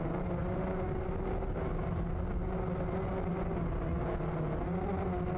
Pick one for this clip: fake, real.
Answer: real